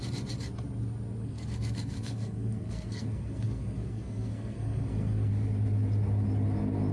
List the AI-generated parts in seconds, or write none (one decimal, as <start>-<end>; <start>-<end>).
1.2-5.3